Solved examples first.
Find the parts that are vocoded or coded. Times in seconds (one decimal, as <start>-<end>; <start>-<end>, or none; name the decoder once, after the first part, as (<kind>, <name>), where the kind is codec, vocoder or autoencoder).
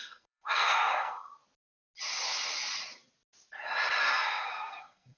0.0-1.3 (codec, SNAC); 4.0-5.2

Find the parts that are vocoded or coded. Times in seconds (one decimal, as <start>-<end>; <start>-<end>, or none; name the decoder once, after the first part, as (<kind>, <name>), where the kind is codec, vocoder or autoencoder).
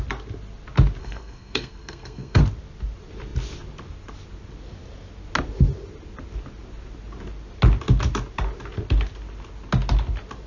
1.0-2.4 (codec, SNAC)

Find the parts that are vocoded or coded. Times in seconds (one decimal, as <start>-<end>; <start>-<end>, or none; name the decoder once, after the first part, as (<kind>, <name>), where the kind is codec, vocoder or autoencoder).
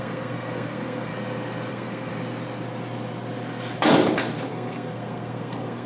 0.0-1.1 (codec, SNAC); 1.7-2.1; 4.5-5.9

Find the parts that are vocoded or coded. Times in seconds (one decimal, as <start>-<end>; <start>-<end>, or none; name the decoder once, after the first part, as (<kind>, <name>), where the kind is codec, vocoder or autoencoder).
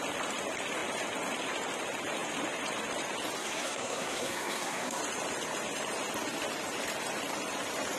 3.4-5.0 (codec, SNAC)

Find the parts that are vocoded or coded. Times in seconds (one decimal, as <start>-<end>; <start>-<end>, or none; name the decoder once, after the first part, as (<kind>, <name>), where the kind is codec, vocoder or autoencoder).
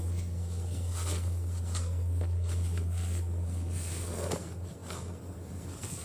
0.0-6.0 (codec, SNAC)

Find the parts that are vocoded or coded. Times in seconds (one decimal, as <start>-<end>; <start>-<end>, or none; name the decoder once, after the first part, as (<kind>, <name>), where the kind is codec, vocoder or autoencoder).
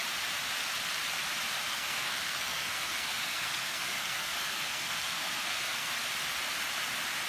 1.7-5.9 (codec, SNAC)